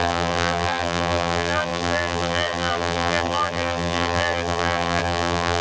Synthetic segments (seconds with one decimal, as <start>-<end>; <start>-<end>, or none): 0.0-5.6